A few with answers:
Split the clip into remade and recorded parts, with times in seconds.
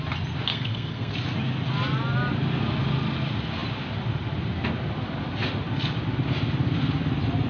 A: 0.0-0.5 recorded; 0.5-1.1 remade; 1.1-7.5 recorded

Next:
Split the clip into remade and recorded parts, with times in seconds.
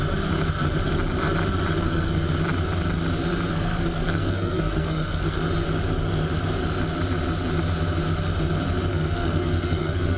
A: 0.0-1.8 recorded; 1.8-2.3 remade; 2.3-3.5 recorded; 3.5-5.4 remade; 5.4-8.9 recorded; 8.9-10.2 remade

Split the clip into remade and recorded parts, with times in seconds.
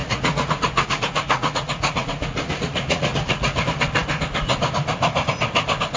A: 0.0-3.6 remade; 3.6-6.0 recorded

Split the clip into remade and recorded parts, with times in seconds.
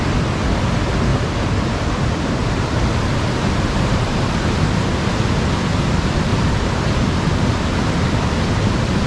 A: 0.0-1.1 recorded; 1.1-1.8 remade; 1.8-2.4 recorded; 2.4-4.3 remade; 4.3-6.3 recorded; 6.3-6.9 remade; 6.9-9.1 recorded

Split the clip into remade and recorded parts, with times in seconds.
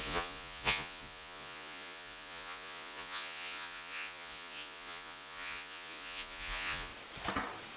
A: 0.0-6.9 remade; 6.9-7.8 recorded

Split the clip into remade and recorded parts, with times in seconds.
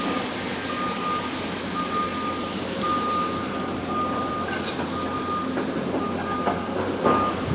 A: 0.0-7.5 recorded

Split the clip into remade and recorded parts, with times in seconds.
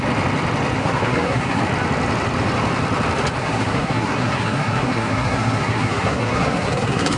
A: 0.0-0.8 recorded; 0.8-1.6 remade; 1.6-3.4 recorded; 3.4-7.2 remade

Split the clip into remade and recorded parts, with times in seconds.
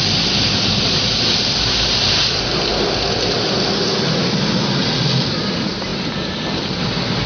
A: 0.0-4.8 recorded; 4.8-5.4 remade; 5.4-7.3 recorded